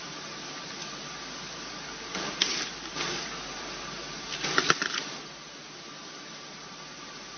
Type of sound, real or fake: real